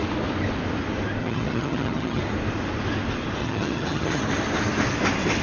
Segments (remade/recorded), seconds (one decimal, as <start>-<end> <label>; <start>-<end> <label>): 0.0-1.2 recorded; 1.2-2.2 remade; 2.2-3.4 recorded; 3.4-4.2 remade; 4.2-5.4 recorded